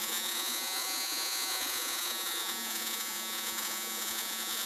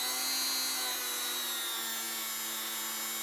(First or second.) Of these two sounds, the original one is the second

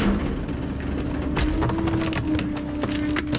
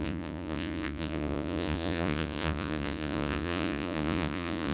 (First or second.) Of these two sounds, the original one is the first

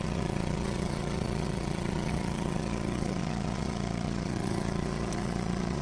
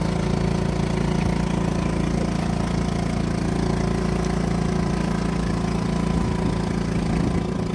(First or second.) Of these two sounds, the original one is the second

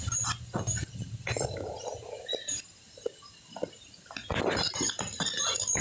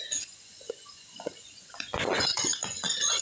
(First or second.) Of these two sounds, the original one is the first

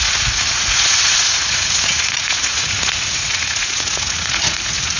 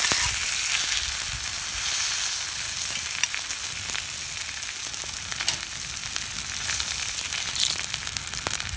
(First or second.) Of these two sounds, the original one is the second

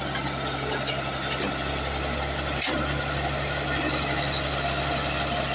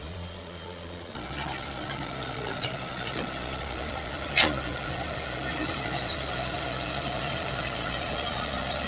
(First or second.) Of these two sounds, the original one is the first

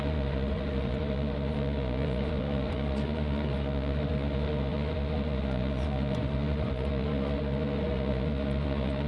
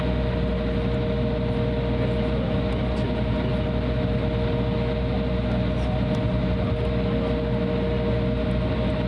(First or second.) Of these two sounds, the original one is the second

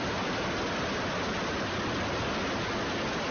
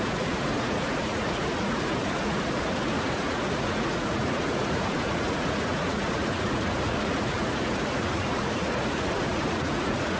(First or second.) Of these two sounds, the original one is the first